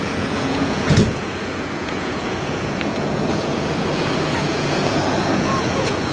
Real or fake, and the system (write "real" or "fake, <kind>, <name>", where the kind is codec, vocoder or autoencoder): fake, vocoder, Vocos